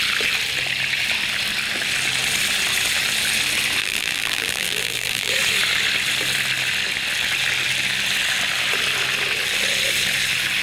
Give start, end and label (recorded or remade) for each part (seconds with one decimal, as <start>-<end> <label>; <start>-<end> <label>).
0.0-3.8 recorded; 3.8-5.3 remade; 5.3-10.6 recorded